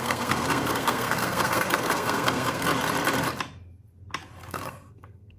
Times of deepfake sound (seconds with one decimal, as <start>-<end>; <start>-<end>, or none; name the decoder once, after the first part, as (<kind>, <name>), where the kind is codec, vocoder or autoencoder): 0.0-2.7 (codec, SNAC); 4.5-5.4